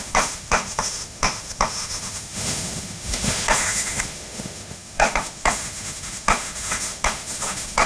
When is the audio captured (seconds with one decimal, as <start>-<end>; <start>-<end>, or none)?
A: none